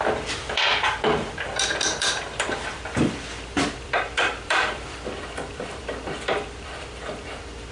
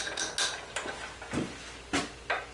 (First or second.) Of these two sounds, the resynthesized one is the first